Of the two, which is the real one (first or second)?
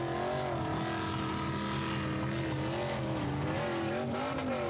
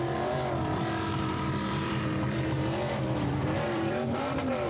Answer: first